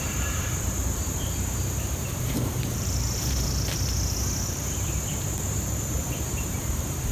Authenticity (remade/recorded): remade